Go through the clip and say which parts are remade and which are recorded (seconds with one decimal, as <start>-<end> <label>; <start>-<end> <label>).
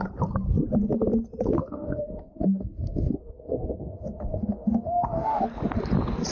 0.0-1.6 recorded; 1.6-5.4 remade; 5.4-6.3 recorded